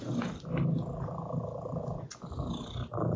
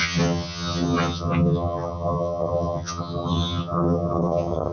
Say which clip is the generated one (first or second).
second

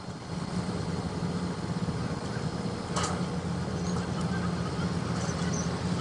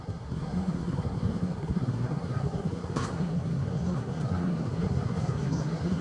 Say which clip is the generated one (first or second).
second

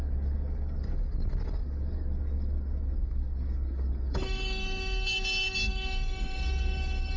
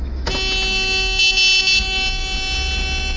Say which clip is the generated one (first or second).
first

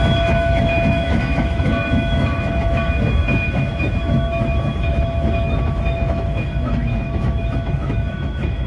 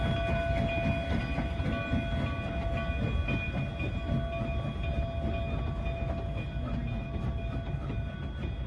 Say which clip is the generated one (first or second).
first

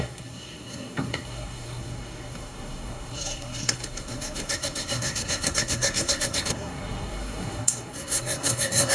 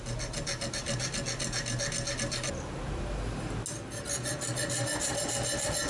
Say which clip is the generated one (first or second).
first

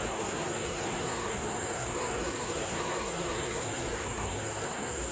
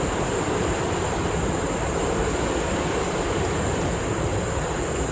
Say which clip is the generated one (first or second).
first